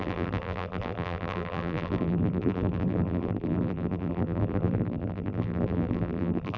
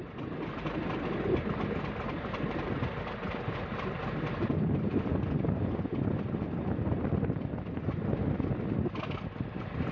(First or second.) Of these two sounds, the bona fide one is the second